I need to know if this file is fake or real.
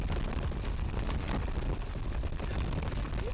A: real